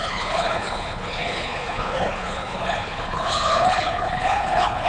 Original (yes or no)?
no